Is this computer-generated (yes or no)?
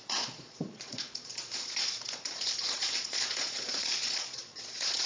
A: yes